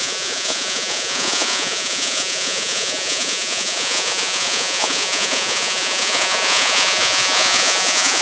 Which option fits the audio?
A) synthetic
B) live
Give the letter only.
A